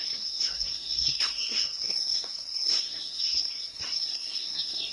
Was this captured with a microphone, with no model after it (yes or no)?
no